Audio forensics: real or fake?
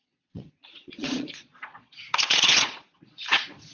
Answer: fake